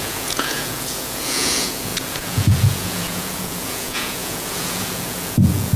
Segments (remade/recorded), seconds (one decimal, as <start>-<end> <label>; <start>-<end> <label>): 0.0-5.8 remade